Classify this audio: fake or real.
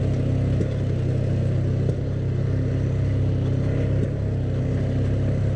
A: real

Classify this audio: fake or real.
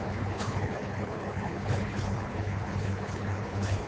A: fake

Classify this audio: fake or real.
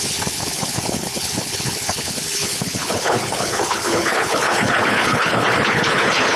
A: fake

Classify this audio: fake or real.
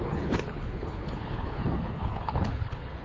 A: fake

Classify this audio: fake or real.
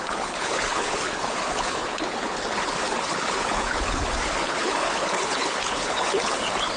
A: fake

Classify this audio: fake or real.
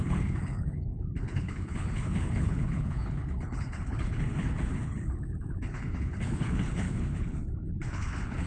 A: fake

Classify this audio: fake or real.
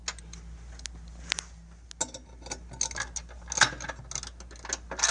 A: real